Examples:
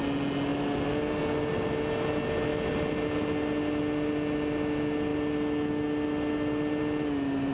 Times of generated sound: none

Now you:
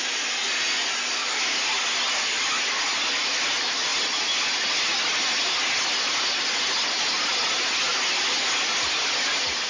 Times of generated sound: none

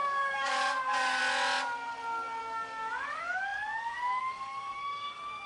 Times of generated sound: 0.0-1.2 (codec, DAC); 2.4-5.5

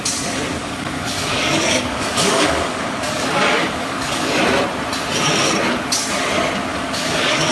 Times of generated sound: 0.6-4.4 (codec, DAC); 6.7-7.5

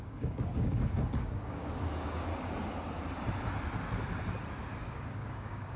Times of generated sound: 0.0-2.3 (codec, DAC); 4.8-5.8